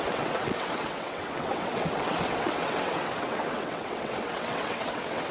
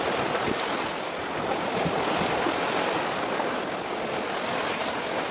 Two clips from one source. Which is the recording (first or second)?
second